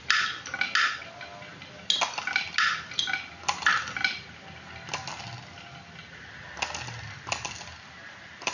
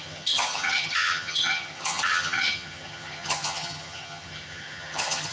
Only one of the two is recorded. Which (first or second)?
first